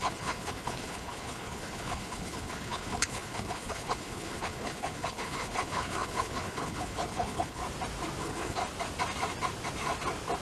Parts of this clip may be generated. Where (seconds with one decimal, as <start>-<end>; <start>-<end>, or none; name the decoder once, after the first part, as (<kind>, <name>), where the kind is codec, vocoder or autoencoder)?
0.0-7.6 (codec, HILCodec); 8.2-8.6